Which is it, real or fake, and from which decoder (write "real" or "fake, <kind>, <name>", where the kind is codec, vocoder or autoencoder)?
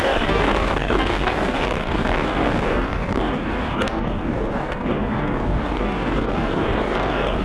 fake, codec, DAC